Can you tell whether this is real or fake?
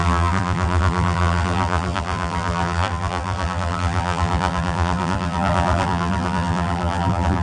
fake